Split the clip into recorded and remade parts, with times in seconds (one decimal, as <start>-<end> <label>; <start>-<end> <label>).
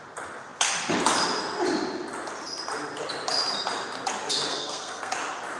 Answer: 0.0-4.5 recorded; 4.5-5.1 remade; 5.1-5.6 recorded